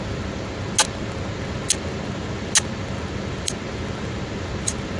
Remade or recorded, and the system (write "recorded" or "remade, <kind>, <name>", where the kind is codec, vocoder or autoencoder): recorded